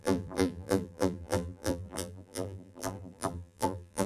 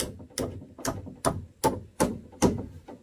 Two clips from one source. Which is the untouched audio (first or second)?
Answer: second